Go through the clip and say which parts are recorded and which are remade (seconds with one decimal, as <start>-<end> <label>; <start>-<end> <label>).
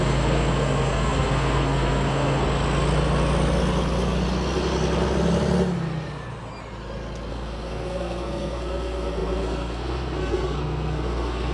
0.0-2.4 remade; 2.4-7.3 recorded; 7.3-11.5 remade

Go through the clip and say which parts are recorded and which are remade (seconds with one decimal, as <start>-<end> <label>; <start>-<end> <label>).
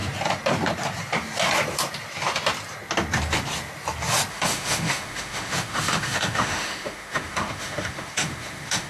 0.0-4.3 recorded; 4.3-8.9 remade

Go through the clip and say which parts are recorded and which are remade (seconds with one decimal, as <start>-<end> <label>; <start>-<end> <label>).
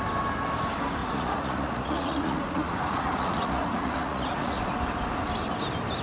0.0-1.0 recorded; 1.0-4.6 remade; 4.6-6.0 recorded